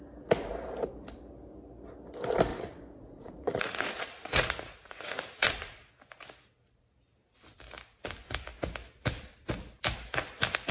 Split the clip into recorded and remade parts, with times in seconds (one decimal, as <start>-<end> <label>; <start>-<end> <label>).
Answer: 0.0-2.5 recorded; 2.5-5.9 remade; 5.9-10.7 recorded